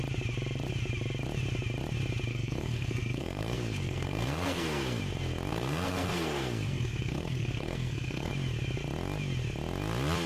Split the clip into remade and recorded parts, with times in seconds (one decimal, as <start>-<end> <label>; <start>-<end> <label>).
0.0-2.3 recorded; 2.3-5.0 remade; 5.0-5.5 recorded; 5.5-8.3 remade; 8.3-10.3 recorded